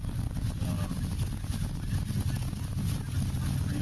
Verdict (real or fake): real